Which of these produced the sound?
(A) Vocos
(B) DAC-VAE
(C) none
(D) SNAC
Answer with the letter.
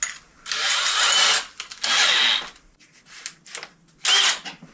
C